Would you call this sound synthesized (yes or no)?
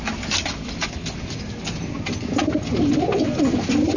no